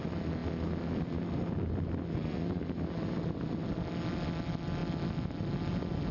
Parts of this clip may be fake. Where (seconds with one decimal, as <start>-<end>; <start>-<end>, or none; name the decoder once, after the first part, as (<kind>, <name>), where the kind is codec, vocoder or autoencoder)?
none

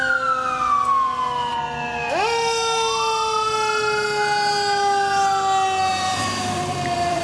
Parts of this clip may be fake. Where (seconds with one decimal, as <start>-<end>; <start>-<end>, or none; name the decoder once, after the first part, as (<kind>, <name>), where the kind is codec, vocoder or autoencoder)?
5.9-7.2 (vocoder, BigVGAN v2)

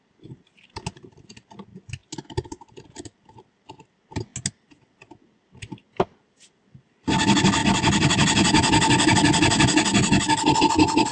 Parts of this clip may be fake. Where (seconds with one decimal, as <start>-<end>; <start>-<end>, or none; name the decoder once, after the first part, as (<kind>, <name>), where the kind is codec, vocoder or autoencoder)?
none

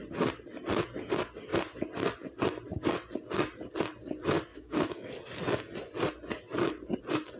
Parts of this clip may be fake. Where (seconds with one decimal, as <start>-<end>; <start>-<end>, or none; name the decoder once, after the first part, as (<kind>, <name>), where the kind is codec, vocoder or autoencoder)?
4.5-5.2 (autoencoder, DAC-VAE)

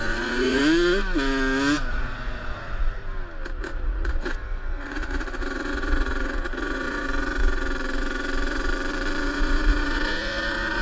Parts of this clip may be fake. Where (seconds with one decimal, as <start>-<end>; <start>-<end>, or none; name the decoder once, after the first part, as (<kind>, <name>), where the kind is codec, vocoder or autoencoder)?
0.0-0.6 (vocoder, Vocos); 1.9-3.0; 3.6-8.7; 9.2-10.8

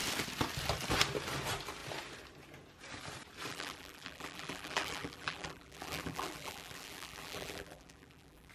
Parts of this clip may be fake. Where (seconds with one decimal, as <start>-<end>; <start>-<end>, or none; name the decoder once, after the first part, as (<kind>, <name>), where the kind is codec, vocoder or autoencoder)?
3.5-8.5 (vocoder, BigVGAN v2)

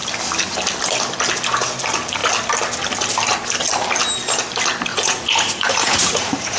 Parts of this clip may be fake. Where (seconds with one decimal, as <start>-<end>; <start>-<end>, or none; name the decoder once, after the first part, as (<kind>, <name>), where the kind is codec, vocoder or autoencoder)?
4.9-6.6 (vocoder, Vocos)

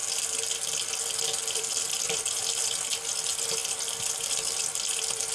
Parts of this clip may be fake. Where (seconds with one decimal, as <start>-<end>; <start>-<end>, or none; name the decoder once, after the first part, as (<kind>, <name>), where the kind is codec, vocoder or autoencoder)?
1.4-5.3 (vocoder, BigVGAN v2)